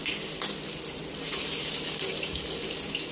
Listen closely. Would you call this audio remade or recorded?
recorded